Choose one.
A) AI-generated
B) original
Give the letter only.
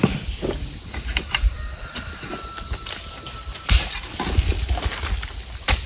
B